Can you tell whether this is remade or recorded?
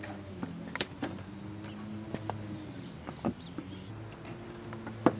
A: recorded